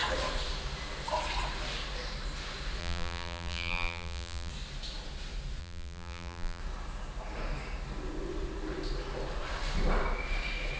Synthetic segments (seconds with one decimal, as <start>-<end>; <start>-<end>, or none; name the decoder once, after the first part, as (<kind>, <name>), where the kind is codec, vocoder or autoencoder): 2.8-4.5 (vocoder, BigVGAN v2); 5.6-6.6